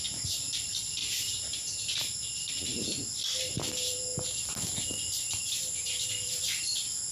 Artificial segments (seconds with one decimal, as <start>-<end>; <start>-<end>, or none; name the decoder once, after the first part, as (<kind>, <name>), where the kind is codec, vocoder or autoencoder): 0.0-1.0 (vocoder, BigVGAN v2); 2.5-7.1